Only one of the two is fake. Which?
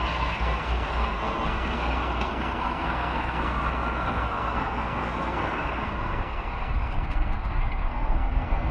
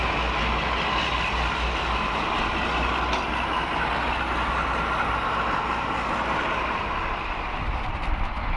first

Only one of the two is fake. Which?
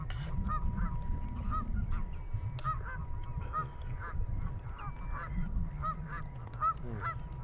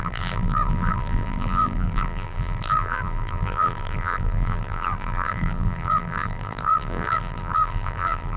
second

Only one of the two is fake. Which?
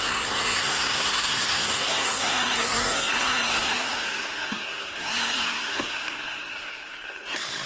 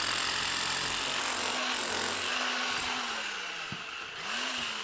first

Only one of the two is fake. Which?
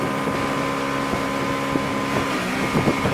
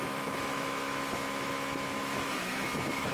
second